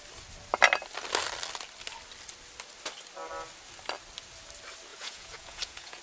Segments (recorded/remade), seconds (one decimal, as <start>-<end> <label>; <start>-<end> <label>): 0.0-4.9 recorded; 4.9-6.0 remade

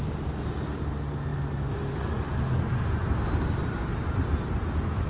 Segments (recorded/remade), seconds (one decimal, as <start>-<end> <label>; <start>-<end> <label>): 0.0-5.1 recorded

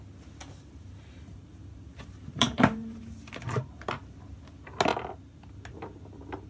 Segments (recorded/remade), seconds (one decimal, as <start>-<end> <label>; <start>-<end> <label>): 0.0-0.4 recorded; 0.4-3.6 remade; 3.6-6.5 recorded

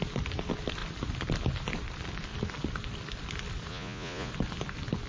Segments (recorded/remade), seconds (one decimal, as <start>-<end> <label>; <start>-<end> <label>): 0.0-3.7 recorded; 3.7-4.3 remade; 4.3-5.1 recorded